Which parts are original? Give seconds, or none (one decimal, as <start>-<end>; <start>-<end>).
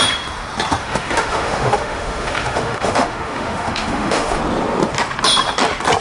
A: 0.0-0.8; 4.4-6.0